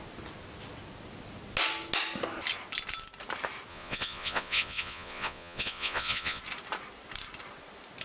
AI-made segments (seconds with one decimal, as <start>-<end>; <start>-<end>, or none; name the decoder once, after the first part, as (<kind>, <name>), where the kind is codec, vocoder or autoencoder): 3.7-6.4 (vocoder, Vocos)